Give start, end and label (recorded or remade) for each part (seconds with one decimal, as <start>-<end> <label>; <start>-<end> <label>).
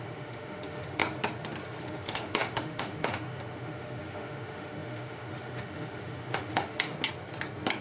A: 0.0-1.0 remade; 1.0-1.8 recorded; 1.8-6.9 remade; 6.9-7.8 recorded